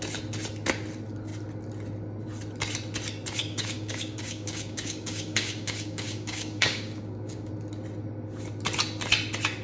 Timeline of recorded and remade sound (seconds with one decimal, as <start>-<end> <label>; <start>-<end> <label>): 0.0-3.4 recorded; 3.4-7.5 remade; 7.5-9.6 recorded